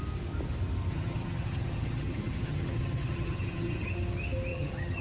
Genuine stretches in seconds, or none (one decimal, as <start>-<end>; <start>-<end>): 0.0-0.9; 3.9-4.5